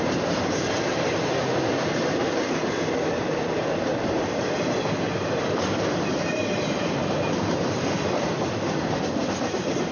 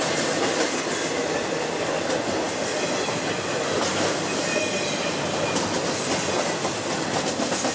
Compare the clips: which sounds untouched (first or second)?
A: second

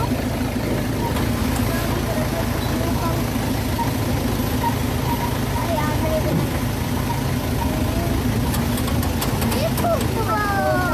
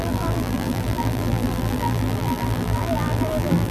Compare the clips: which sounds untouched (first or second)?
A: first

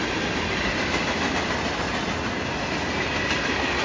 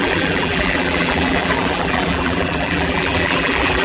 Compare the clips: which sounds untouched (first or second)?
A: first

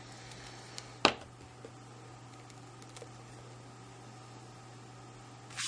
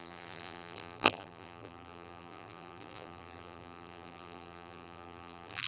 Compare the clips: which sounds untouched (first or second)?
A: first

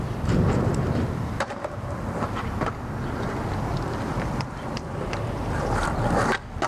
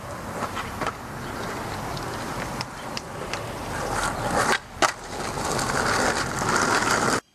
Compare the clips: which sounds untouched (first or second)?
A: second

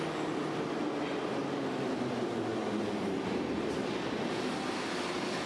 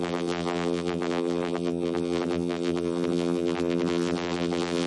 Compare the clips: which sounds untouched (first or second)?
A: first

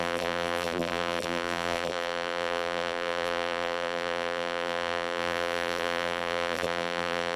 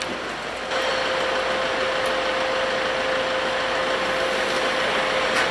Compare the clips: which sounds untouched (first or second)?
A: second